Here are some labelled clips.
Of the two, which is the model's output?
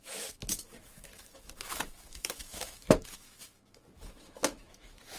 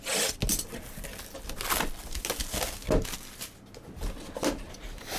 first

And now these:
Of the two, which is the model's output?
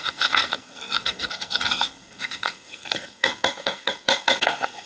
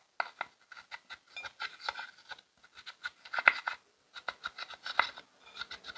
first